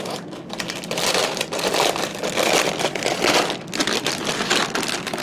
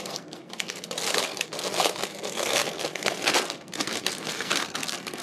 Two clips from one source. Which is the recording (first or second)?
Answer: first